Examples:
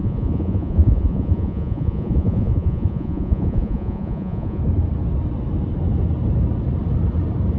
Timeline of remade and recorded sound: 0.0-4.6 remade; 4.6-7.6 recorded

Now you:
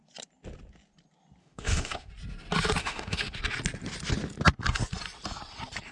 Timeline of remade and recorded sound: 0.0-1.4 recorded; 1.4-2.1 remade; 2.1-2.8 recorded; 2.8-3.3 remade; 3.3-5.9 recorded

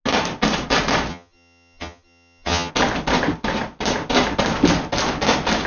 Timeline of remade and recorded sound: 0.0-1.1 recorded; 1.1-2.7 remade; 2.7-5.7 recorded

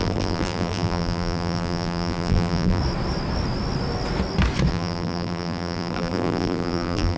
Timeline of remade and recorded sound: 0.0-2.8 remade; 2.8-4.7 recorded; 4.7-7.2 remade

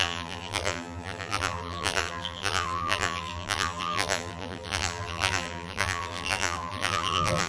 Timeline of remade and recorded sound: 0.0-7.5 remade